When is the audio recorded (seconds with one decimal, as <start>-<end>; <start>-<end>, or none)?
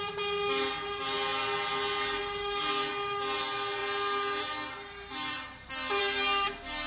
0.0-6.9